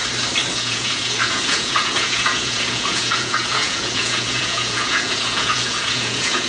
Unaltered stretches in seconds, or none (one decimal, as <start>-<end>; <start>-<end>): 0.0-0.5